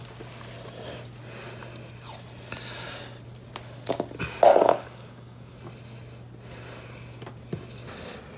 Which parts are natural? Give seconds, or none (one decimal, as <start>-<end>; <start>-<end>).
0.0-4.5; 5.6-8.4